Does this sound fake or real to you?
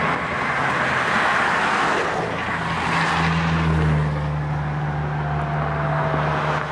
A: real